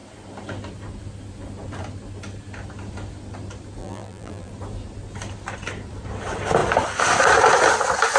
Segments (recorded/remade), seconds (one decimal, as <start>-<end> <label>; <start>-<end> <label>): 0.0-3.8 recorded; 3.8-4.5 remade; 4.5-8.2 recorded

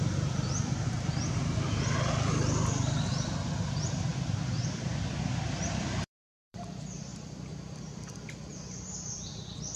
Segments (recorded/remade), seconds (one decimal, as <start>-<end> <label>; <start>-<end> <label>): 0.0-9.8 remade